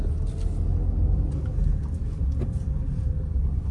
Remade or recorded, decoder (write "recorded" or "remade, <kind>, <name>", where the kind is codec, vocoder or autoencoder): recorded